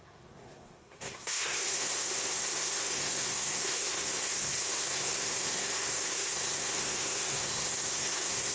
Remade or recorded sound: remade